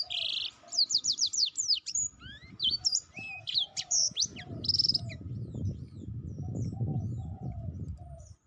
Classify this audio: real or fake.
fake